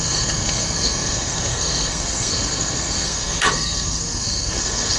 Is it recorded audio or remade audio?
remade